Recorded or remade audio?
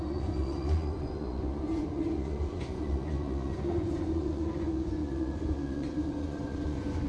remade